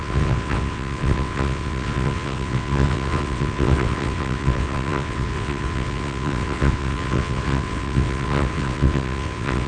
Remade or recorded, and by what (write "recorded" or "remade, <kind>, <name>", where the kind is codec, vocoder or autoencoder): remade, vocoder, WaveNeXt